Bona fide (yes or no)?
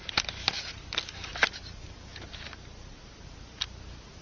yes